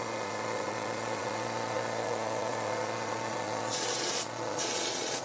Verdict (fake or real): fake